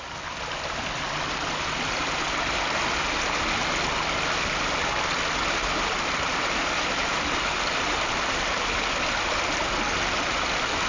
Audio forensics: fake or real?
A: real